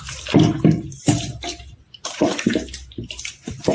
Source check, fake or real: real